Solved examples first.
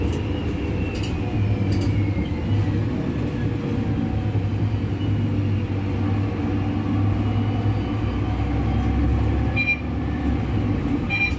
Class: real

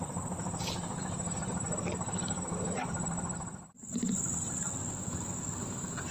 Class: fake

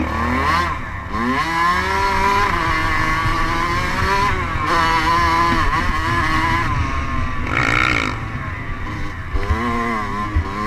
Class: real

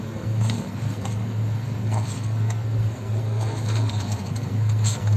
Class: fake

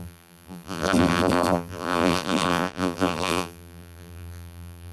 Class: fake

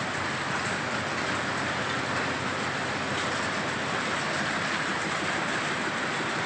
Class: fake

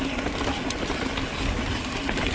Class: real